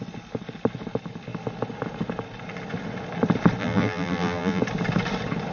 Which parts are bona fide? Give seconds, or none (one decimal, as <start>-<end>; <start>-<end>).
0.0-3.6; 4.6-5.5